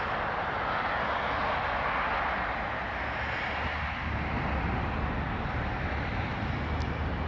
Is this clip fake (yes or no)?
no